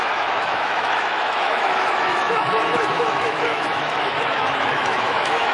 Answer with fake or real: fake